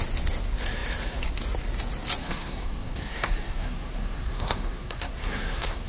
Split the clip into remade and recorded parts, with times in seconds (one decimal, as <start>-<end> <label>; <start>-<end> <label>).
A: 0.0-2.2 recorded; 2.2-5.9 remade